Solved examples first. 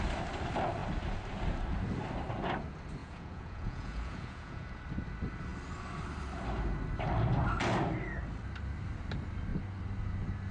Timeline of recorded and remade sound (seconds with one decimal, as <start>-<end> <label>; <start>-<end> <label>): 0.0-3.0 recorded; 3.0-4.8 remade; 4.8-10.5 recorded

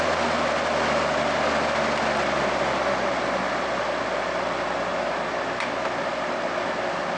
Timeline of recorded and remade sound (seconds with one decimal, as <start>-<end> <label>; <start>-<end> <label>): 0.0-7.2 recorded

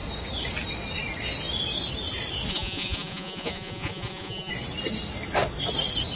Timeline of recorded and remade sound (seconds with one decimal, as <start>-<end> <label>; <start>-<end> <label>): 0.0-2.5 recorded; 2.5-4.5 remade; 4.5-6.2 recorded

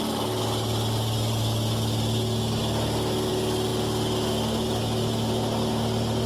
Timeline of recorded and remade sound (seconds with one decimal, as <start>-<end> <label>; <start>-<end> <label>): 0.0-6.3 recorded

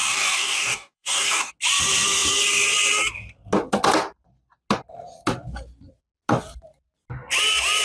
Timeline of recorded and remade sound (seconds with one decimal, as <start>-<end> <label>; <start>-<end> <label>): 0.0-1.5 remade; 1.5-7.8 recorded

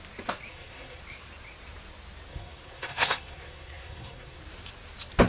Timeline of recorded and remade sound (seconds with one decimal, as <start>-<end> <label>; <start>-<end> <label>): 0.0-0.5 recorded; 0.5-1.0 remade; 1.0-2.3 recorded; 2.3-4.4 remade; 4.4-5.3 recorded